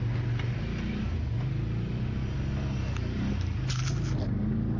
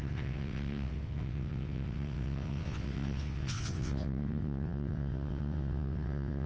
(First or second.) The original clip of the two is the first